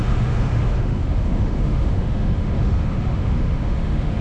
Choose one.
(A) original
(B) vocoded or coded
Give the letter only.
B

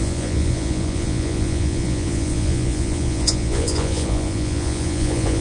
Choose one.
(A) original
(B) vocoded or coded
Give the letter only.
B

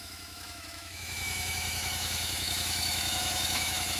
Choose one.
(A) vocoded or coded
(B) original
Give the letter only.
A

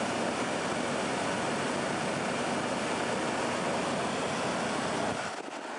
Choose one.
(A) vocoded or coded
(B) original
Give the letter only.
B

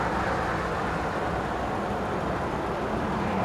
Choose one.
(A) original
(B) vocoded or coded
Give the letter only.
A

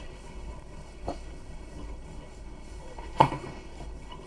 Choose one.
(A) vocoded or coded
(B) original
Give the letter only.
A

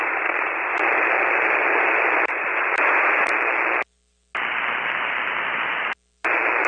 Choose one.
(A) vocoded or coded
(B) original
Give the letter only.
A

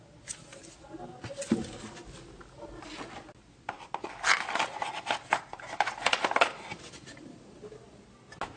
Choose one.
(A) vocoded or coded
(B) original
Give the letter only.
B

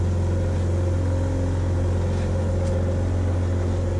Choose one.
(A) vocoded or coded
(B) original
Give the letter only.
B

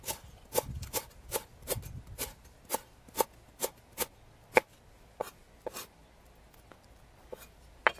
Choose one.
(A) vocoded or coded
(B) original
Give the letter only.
B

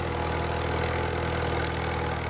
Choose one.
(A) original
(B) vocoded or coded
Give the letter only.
A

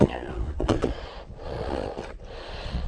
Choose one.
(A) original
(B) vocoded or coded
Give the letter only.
B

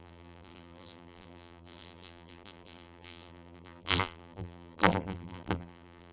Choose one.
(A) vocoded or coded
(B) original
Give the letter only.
A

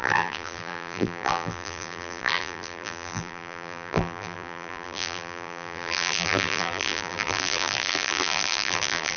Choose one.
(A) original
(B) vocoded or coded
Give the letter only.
B